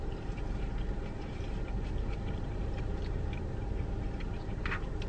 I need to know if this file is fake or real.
fake